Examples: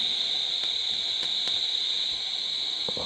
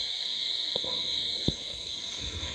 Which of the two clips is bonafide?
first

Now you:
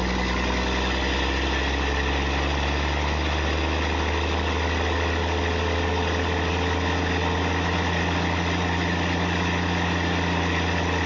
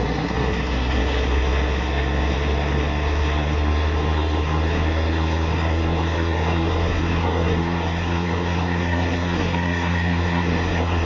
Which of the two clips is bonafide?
first